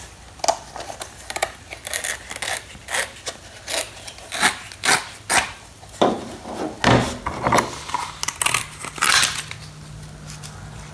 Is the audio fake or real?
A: real